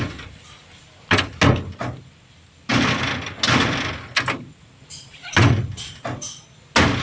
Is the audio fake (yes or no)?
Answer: no